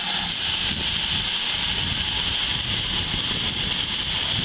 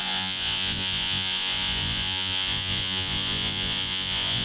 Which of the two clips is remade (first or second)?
second